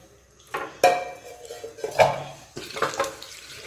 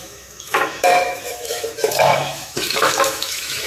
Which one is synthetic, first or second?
second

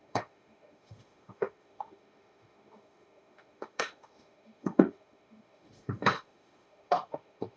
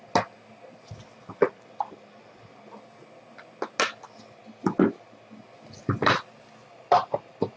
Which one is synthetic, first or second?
first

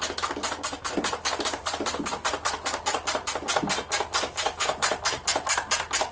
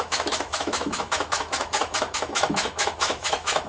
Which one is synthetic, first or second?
second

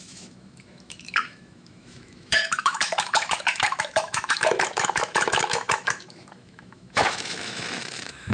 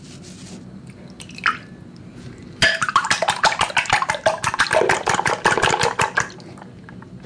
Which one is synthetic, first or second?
first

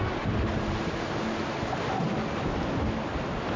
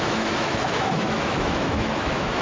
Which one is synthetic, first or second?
second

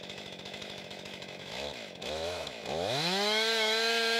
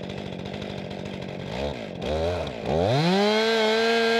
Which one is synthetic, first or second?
first